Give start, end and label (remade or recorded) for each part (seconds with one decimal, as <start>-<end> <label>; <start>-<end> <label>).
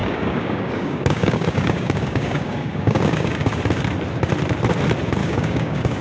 0.0-3.6 remade; 3.6-5.2 recorded; 5.2-6.0 remade